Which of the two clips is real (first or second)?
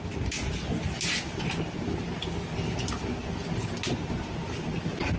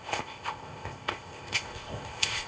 first